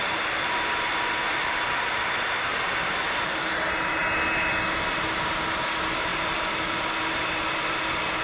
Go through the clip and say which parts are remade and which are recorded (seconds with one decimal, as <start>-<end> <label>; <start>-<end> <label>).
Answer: 0.0-1.3 recorded; 1.3-2.0 remade; 2.0-2.5 recorded; 2.5-4.0 remade; 4.0-6.1 recorded; 6.1-6.8 remade; 6.8-8.2 recorded